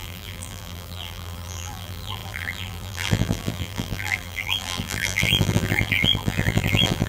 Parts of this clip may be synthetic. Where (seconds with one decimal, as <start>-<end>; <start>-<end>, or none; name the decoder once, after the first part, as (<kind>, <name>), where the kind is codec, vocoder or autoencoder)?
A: 0.0-7.1 (vocoder, BigVGAN v2)